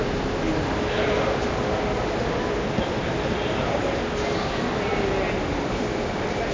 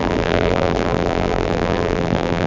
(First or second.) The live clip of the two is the first